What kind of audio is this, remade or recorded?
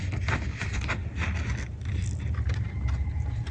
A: recorded